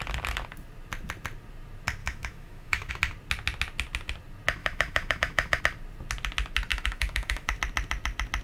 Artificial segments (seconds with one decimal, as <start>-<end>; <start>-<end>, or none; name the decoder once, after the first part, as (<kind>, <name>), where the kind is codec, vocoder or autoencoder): 2.0-2.9 (autoencoder, DAC-VAE); 4.6-5.6; 6.7-7.6